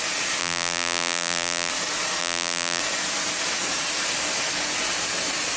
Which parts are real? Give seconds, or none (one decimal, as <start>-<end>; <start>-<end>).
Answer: 0.0-0.4; 1.7-2.2; 2.8-5.6

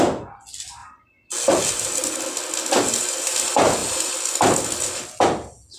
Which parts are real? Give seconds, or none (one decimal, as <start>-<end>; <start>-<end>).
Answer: 0.0-5.8

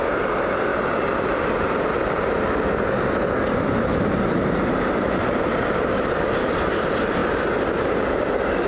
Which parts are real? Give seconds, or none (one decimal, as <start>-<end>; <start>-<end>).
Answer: 0.7-3.7; 7.2-7.9

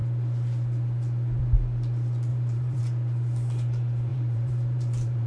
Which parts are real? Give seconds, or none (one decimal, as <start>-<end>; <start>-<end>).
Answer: 0.0-2.3; 2.8-4.1

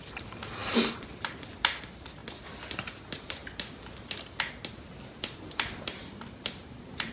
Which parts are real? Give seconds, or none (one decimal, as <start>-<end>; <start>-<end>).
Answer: 2.2-2.8; 3.4-4.9

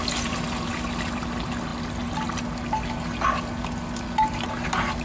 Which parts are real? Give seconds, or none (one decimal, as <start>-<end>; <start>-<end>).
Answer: 0.0-5.0

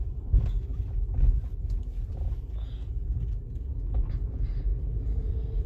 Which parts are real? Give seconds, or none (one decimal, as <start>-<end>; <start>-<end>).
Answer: 0.7-4.1; 4.7-5.3